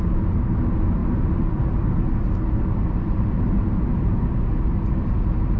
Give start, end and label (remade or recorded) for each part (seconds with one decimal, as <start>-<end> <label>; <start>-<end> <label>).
0.0-5.6 recorded